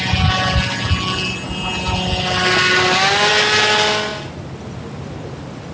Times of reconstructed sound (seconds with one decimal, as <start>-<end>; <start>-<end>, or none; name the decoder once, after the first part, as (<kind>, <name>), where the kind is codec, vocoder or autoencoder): none